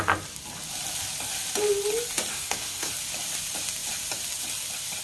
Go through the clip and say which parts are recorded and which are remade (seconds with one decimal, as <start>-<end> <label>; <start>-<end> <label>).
0.0-2.3 recorded; 2.3-2.9 remade; 2.9-5.0 recorded